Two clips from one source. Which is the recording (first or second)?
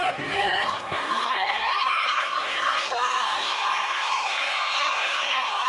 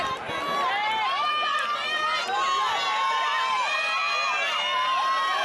second